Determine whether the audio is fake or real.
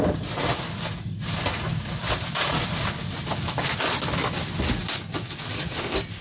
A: real